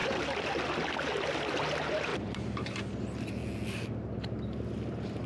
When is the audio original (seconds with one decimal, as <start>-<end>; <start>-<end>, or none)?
0.5-2.1; 2.8-5.3